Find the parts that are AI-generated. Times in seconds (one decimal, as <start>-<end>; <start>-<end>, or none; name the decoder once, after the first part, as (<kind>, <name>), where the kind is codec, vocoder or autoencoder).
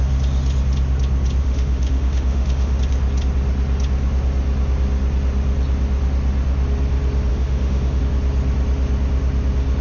1.4-2.8 (autoencoder, DAC-VAE); 7.3-8.0